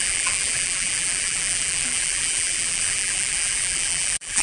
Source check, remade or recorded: remade